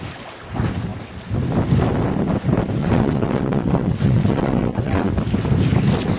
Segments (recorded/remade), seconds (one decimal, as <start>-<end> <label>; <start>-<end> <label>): 0.0-2.8 recorded; 2.8-5.1 remade; 5.1-6.2 recorded